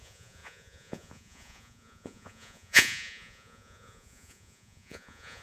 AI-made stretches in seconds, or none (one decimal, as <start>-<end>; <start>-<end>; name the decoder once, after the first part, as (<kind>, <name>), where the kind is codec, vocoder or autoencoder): 0.0-5.4 (vocoder, Vocos)